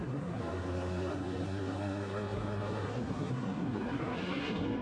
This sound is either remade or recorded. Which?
remade